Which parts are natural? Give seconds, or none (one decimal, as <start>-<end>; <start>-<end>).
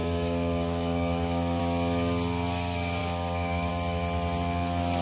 1.6-3.0; 3.7-5.0